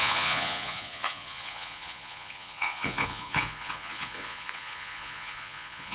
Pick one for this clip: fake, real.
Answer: fake